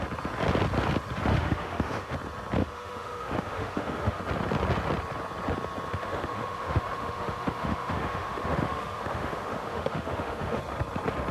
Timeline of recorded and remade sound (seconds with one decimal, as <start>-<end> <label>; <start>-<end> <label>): 0.0-1.3 recorded; 1.3-2.1 remade; 2.1-2.6 recorded; 2.6-4.2 remade; 4.2-5.9 recorded; 5.9-10.6 remade; 10.6-11.3 recorded